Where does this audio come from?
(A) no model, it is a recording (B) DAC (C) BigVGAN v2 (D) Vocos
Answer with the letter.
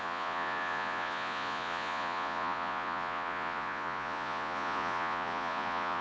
D